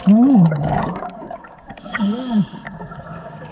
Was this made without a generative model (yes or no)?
no